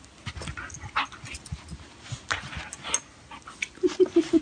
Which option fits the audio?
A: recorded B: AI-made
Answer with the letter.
A